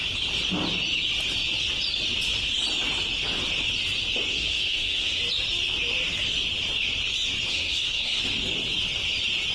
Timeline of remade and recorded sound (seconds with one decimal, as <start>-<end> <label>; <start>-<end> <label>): 0.0-4.3 recorded; 4.3-5.2 remade; 5.2-7.5 recorded; 7.5-8.2 remade; 8.2-9.5 recorded